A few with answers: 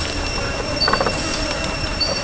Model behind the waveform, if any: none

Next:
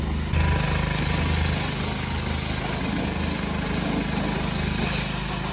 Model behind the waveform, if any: none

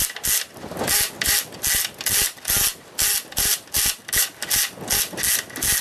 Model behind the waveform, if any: none